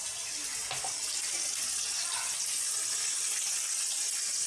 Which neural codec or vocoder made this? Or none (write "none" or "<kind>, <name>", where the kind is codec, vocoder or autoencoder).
none